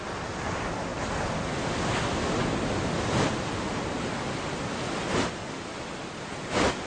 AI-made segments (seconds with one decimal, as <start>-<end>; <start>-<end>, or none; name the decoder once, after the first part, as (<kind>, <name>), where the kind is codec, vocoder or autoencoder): none